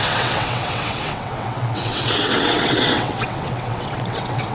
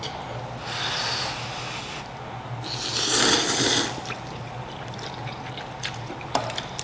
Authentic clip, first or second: second